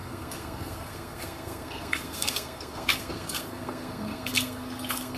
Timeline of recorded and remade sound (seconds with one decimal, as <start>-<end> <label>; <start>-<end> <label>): 0.0-5.2 remade